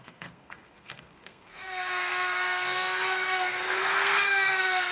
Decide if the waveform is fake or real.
fake